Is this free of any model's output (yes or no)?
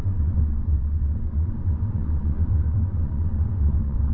no